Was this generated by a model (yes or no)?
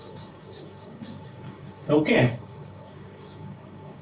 yes